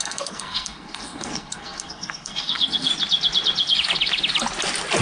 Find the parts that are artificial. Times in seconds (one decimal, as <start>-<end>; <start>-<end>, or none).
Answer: 0.0-2.9